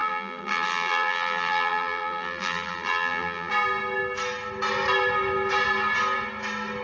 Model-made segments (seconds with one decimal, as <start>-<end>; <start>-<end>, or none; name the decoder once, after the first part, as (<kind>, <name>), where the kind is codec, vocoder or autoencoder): 0.0-3.5 (vocoder, BigVGAN v2)